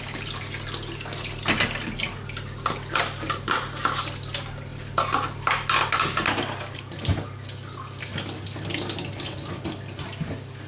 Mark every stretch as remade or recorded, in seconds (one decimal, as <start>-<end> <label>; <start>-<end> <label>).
0.0-10.7 recorded